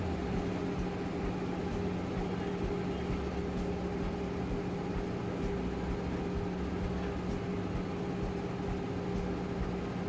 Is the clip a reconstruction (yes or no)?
no